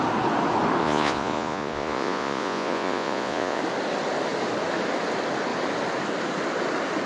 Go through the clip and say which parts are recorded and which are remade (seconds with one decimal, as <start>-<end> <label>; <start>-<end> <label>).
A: 0.0-0.8 recorded; 0.8-3.6 remade; 3.6-7.1 recorded